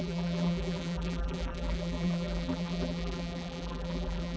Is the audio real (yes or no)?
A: no